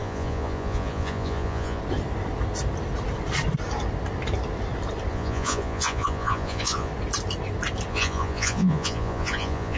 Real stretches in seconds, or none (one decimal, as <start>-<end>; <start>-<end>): 1.8-5.1; 6.9-7.9